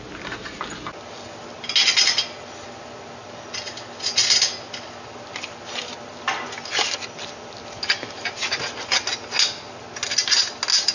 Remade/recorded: recorded